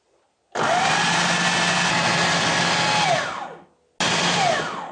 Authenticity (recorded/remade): recorded